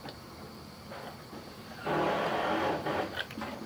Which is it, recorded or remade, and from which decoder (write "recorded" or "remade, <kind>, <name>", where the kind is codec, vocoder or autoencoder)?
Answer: remade, vocoder, BigVGAN v2